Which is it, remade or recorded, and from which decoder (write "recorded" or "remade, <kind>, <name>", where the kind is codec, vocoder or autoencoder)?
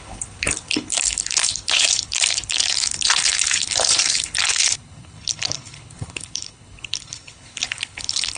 remade, codec, HILCodec